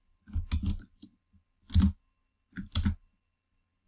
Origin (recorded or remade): recorded